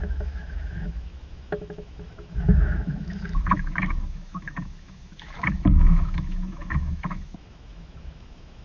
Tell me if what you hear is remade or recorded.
remade